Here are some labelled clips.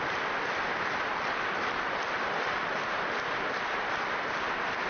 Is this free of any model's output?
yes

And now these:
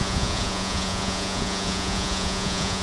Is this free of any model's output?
no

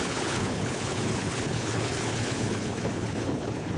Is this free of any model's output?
no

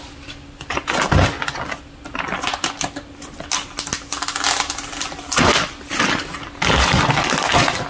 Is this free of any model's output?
yes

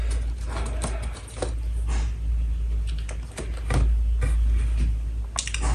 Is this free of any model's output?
yes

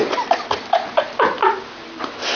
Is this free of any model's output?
yes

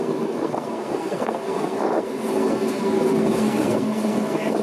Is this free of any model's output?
no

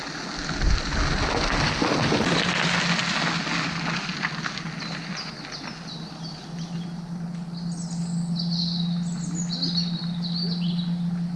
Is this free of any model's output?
yes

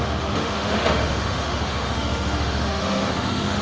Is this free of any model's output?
no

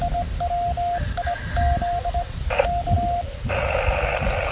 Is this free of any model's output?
yes